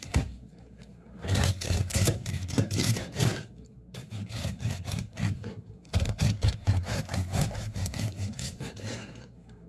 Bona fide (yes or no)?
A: no